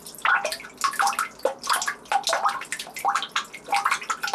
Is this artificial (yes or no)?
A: no